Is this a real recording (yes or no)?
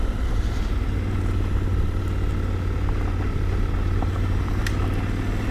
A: yes